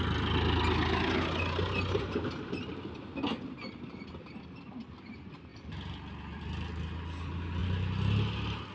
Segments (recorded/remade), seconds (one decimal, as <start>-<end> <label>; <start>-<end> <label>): 0.0-8.7 recorded